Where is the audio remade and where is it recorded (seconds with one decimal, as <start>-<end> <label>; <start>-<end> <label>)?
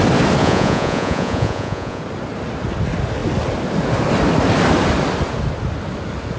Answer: 0.0-0.4 recorded; 0.4-2.0 remade; 2.0-6.4 recorded